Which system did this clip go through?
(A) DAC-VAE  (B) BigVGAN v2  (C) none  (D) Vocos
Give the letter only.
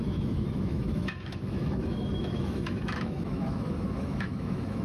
A